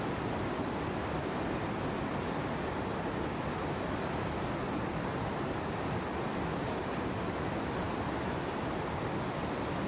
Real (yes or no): yes